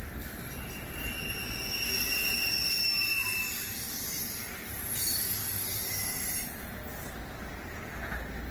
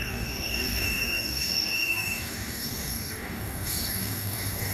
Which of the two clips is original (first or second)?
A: first